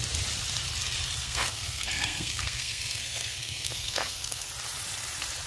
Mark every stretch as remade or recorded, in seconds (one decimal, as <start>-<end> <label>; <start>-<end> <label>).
0.0-1.2 recorded; 1.2-4.5 remade; 4.5-5.5 recorded